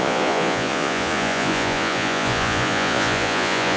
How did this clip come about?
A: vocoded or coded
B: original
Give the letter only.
A